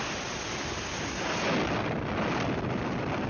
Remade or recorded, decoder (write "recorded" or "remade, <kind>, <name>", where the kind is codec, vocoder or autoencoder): recorded